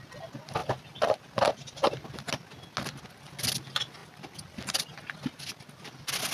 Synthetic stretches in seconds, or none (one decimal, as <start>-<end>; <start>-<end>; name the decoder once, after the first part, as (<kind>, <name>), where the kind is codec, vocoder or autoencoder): none